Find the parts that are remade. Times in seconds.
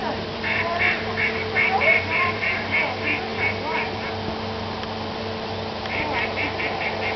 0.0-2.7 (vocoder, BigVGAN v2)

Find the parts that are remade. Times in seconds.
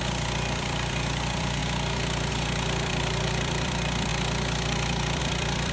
0.0-1.6 (vocoder, BigVGAN v2); 2.3-5.7